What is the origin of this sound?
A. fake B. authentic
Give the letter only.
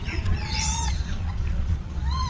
A